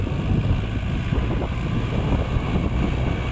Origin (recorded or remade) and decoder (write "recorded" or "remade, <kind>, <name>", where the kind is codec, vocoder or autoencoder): recorded